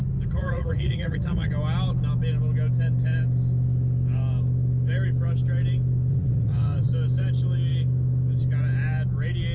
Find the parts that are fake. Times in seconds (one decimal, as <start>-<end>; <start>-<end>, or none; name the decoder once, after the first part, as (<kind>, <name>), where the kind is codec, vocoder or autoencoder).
0.4-1.5 (vocoder, Vocos); 6.1-6.9